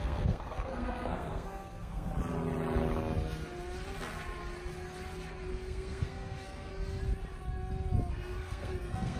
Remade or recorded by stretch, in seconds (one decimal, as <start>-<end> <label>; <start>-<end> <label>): 0.0-2.1 remade; 2.1-5.5 recorded; 5.5-6.7 remade; 6.7-8.1 recorded; 8.1-9.2 remade